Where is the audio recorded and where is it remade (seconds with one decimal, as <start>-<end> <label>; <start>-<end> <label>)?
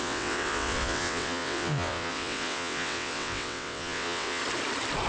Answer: 0.0-4.4 remade; 4.4-5.1 recorded